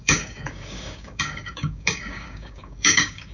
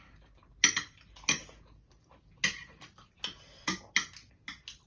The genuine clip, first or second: second